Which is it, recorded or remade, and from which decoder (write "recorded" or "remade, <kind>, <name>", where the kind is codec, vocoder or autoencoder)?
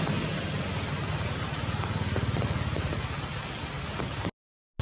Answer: recorded